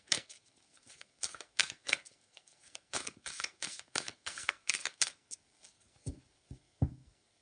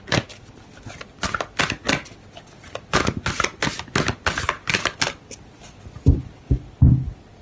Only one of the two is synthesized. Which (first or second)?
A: first